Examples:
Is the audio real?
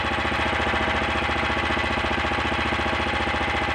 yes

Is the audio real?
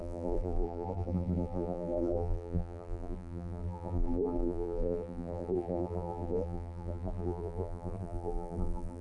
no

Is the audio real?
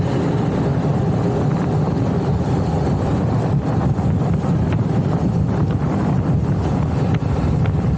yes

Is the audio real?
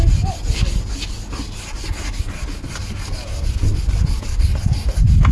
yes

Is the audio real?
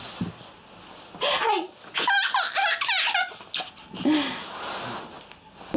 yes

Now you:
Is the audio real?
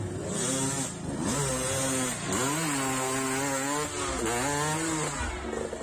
yes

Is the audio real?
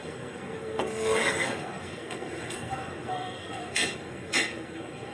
no